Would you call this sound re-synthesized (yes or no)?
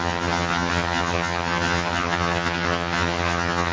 yes